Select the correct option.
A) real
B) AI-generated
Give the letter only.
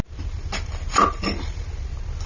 A